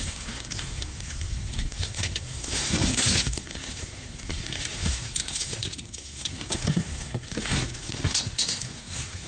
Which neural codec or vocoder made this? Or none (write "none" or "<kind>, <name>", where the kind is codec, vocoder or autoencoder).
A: codec, SNAC